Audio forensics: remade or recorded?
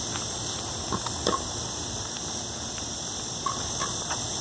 recorded